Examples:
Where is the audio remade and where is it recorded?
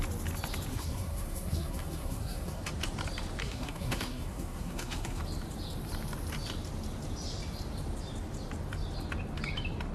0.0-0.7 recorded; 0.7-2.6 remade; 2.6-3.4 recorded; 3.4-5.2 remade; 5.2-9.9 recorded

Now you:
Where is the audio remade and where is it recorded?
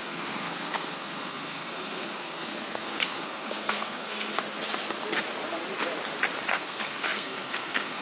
0.0-4.3 remade; 4.3-6.5 recorded; 6.5-8.0 remade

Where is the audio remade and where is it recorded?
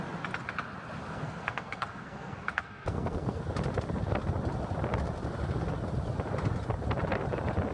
0.0-1.0 recorded; 1.0-3.4 remade; 3.4-7.7 recorded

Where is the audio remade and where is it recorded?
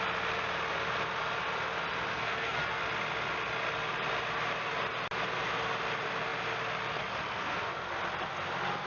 0.0-2.1 recorded; 2.1-2.8 remade; 2.8-7.4 recorded; 7.4-7.9 remade; 7.9-8.9 recorded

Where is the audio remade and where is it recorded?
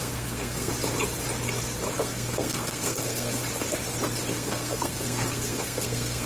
0.0-0.7 remade; 0.7-2.0 recorded; 2.0-3.4 remade; 3.4-4.3 recorded; 4.3-6.3 remade